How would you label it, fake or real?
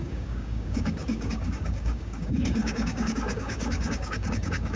fake